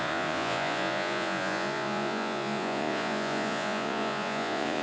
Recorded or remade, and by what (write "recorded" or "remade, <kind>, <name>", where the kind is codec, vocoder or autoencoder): remade, vocoder, Vocos